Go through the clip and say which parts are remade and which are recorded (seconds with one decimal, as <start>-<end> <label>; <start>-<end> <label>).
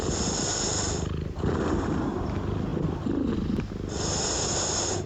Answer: 0.0-5.1 recorded